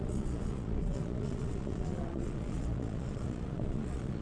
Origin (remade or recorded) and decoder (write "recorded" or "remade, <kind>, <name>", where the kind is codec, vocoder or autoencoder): remade, vocoder, Vocos